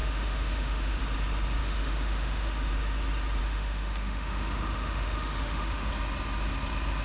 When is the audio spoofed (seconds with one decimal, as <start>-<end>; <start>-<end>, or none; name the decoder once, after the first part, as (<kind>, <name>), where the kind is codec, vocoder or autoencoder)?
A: 0.0-1.0 (autoencoder, DAC-VAE); 1.6-2.7; 3.4-5.9